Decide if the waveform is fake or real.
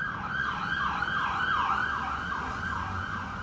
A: fake